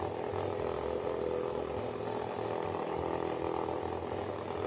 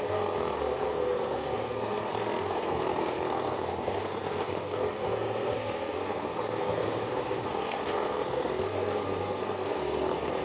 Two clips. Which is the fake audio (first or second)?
second